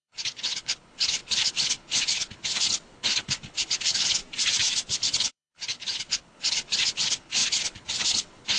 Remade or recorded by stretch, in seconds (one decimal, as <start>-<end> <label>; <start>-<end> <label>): 0.0-4.2 remade; 4.2-4.9 recorded; 4.9-8.6 remade